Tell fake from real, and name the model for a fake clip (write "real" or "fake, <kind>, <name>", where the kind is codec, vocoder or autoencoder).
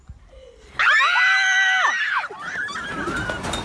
real